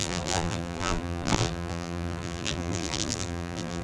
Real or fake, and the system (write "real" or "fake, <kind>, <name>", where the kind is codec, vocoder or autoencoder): fake, vocoder, BigVGAN v2